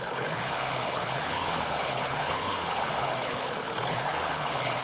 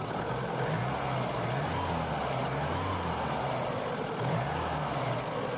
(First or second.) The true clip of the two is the second